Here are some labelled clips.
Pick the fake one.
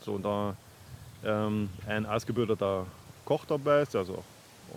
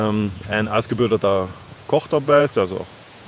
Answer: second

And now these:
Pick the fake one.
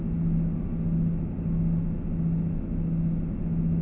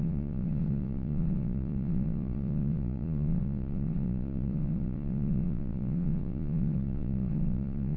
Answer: second